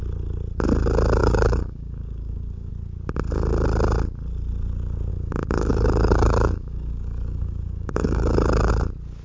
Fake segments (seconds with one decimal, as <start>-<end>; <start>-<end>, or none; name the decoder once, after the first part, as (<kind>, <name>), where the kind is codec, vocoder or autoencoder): 1.2-2.7 (codec, DAC); 5.1-8.7